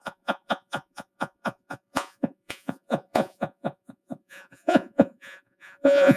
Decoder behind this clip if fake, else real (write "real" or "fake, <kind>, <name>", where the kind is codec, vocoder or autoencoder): fake, vocoder, Vocos